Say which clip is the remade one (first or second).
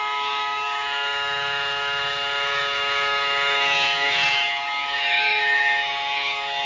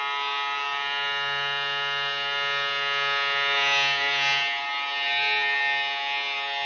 first